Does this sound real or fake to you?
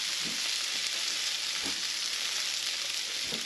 real